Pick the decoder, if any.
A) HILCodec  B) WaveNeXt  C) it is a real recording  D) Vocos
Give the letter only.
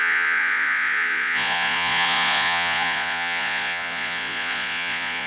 D